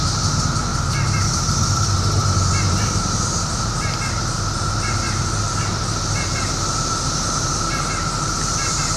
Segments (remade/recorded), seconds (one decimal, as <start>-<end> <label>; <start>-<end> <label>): 0.0-0.7 remade; 0.7-1.2 recorded; 1.2-9.0 remade